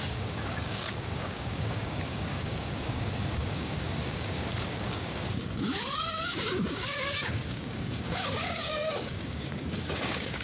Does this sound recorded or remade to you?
remade